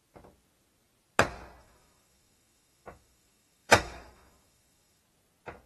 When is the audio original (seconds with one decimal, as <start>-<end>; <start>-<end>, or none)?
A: 0.0-1.6; 5.0-5.7